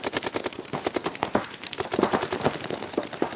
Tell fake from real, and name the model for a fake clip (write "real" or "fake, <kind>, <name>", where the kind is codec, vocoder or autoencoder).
real